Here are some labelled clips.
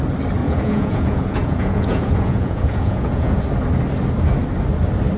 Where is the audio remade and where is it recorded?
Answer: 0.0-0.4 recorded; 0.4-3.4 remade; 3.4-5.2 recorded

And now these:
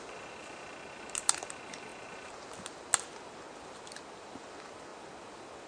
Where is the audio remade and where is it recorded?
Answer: 0.0-5.7 recorded

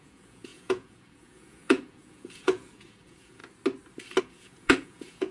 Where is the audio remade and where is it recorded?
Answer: 0.0-3.4 remade; 3.4-4.2 recorded; 4.2-5.3 remade

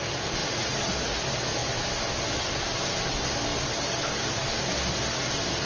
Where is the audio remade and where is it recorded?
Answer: 0.0-0.4 recorded; 0.4-1.2 remade; 1.2-5.7 recorded

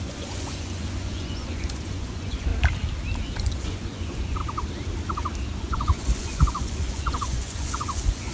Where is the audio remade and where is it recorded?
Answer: 0.0-2.5 remade; 2.5-3.4 recorded; 3.4-4.4 remade; 4.4-5.6 recorded; 5.6-8.3 remade

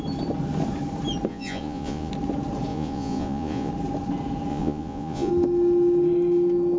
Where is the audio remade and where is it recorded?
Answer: 0.0-1.3 recorded; 1.3-2.1 remade; 2.1-2.7 recorded; 2.7-3.7 remade; 3.7-4.5 recorded; 4.5-5.3 remade; 5.3-6.8 recorded

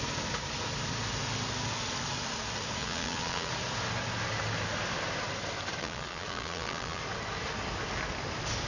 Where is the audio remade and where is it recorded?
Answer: 0.0-2.8 recorded; 2.8-3.5 remade; 3.5-5.8 recorded; 5.8-7.0 remade; 7.0-8.7 recorded